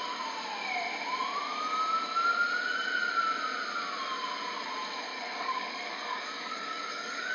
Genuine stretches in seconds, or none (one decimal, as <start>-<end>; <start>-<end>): 0.0-5.1